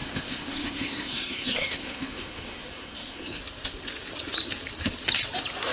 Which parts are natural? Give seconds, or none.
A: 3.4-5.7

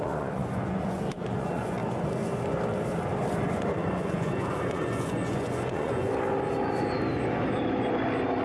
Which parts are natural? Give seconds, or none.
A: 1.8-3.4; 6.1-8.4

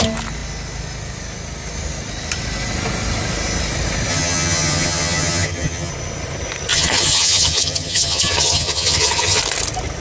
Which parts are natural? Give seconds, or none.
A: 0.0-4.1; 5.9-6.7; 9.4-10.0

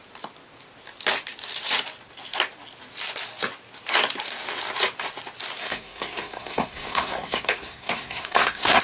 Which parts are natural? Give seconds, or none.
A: 0.0-5.6

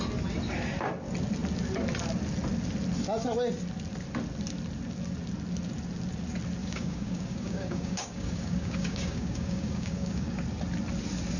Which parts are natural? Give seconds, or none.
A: 0.0-6.6; 10.4-11.4